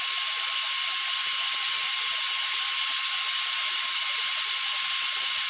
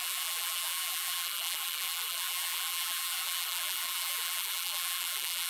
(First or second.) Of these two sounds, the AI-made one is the second